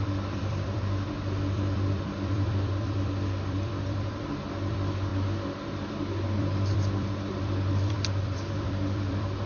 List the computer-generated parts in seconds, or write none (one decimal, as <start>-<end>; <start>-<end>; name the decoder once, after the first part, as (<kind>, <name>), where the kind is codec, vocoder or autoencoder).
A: 0.0-5.1 (vocoder, BigVGAN v2); 6.4-9.5

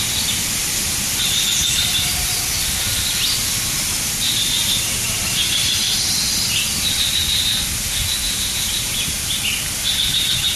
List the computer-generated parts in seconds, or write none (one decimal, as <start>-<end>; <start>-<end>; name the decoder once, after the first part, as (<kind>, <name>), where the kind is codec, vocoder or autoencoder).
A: 1.6-2.3 (vocoder, BigVGAN v2); 8.2-9.3

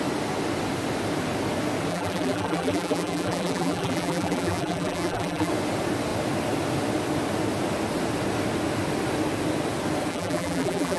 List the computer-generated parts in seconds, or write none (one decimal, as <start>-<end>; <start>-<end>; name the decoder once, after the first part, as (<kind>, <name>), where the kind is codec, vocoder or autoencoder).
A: 1.9-5.5 (vocoder, BigVGAN v2); 10.1-11.0

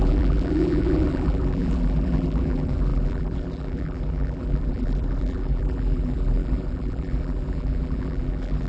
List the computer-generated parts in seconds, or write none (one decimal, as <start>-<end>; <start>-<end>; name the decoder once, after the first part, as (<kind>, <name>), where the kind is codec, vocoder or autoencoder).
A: 0.0-8.7 (vocoder, BigVGAN v2)

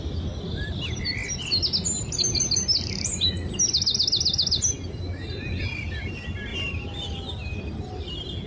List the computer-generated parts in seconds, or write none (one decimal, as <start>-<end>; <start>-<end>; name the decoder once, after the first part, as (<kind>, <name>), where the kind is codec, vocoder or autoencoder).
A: 6.5-7.9 (vocoder, BigVGAN v2)

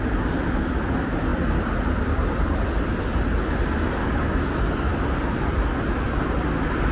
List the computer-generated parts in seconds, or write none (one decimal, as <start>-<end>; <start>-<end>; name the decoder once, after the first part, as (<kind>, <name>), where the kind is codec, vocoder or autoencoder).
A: 1.3-3.8 (vocoder, BigVGAN v2)

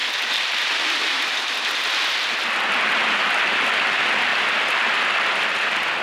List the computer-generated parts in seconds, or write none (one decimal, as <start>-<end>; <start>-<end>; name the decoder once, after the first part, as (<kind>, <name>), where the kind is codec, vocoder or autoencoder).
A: 0.0-1.6 (vocoder, BigVGAN v2); 4.3-6.0

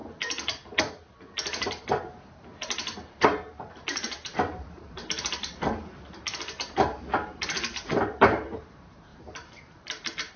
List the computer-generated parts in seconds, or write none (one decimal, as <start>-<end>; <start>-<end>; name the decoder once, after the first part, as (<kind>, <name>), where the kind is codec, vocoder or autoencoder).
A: 1.7-5.0 (vocoder, BigVGAN v2); 5.8-10.4